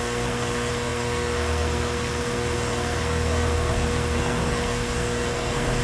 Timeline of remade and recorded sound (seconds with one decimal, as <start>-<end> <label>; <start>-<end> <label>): 0.0-5.8 remade